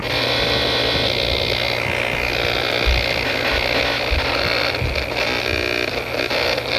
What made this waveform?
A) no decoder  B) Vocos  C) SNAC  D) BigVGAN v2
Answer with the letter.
A